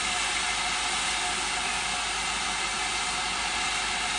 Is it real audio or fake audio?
real